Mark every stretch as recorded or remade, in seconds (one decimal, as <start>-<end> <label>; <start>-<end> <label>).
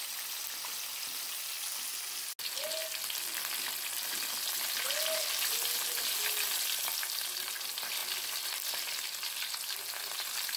0.0-10.6 recorded